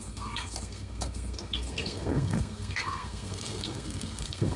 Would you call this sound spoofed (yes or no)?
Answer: yes